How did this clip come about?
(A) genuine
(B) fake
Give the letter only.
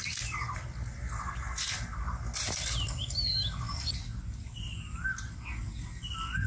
A